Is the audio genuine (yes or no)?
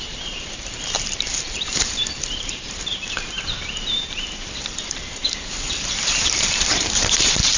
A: no